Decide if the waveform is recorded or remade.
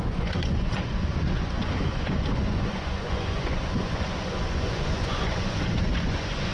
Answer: remade